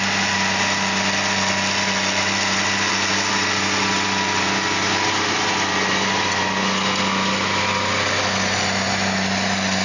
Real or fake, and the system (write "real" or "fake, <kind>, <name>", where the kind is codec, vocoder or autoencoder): real